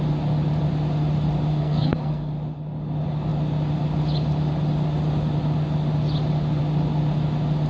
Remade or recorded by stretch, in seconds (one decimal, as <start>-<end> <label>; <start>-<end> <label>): 0.0-1.5 recorded; 1.5-2.3 remade; 2.3-7.7 recorded